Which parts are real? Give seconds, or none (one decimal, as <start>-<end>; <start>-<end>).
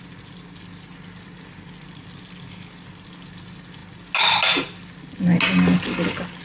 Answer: 0.0-6.4